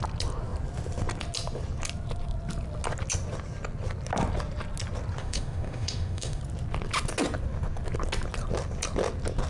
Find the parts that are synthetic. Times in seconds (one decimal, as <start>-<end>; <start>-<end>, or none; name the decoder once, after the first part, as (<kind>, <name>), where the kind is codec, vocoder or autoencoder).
5.2-6.4 (autoencoder, DAC-VAE)